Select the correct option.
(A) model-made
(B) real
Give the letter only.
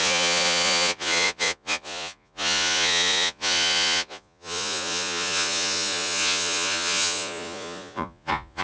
A